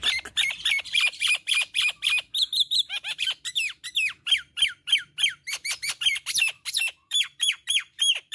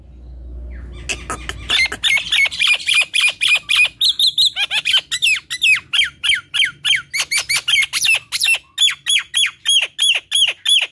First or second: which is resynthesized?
first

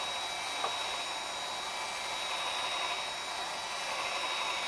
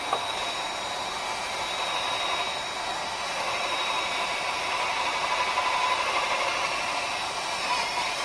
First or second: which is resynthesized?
second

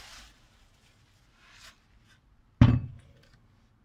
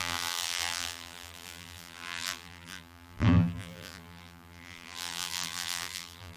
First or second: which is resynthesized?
second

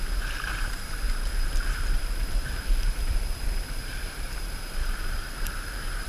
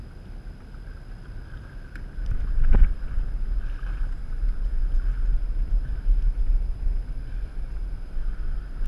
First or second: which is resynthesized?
first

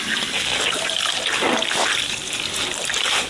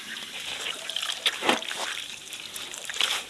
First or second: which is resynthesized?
second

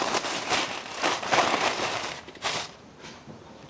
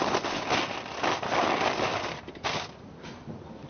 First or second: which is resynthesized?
first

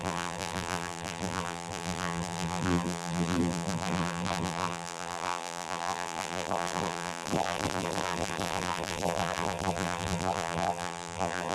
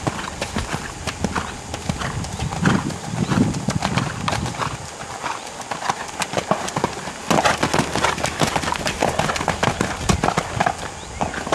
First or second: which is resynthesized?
first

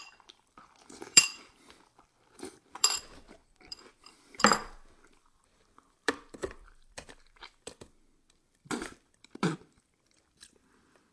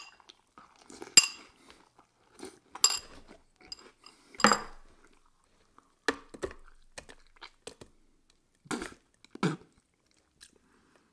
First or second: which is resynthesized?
first